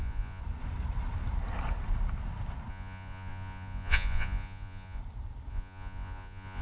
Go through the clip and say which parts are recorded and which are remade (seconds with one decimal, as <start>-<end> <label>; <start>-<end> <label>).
0.0-0.4 remade; 0.4-2.7 recorded; 2.7-5.0 remade; 5.0-5.5 recorded; 5.5-6.6 remade